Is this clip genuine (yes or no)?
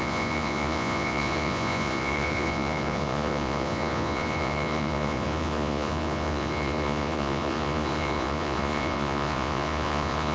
no